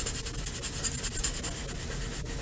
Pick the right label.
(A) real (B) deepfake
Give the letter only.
A